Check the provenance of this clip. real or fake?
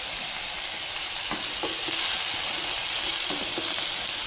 real